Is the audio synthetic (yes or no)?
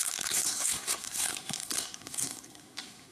yes